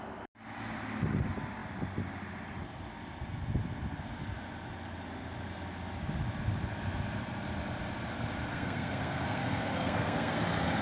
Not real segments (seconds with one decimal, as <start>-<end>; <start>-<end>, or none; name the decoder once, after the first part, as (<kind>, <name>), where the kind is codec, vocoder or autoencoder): 8.5-10.4 (codec, SNAC)